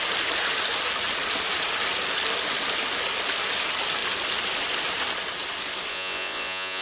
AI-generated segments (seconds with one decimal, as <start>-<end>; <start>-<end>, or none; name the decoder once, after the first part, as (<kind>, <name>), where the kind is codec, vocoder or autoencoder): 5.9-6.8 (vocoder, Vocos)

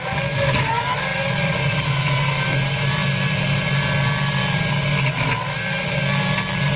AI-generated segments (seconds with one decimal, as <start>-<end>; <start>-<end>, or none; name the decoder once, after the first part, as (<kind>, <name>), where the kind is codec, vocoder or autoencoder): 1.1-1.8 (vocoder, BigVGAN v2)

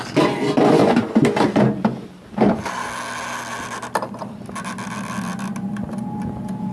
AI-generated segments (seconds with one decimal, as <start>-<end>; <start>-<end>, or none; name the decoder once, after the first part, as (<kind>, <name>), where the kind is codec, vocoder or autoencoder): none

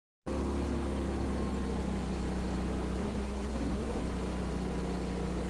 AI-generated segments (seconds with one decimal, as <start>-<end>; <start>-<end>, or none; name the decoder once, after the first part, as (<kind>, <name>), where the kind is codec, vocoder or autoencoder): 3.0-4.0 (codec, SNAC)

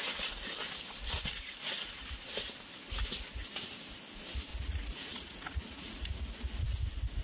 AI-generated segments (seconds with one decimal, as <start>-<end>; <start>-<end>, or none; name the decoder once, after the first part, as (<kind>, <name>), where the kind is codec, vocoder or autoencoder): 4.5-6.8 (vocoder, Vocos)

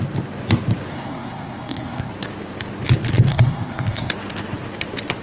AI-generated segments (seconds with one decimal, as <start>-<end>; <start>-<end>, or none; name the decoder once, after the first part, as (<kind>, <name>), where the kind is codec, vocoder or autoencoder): 0.9-2.1 (codec, SNAC); 3.3-4.1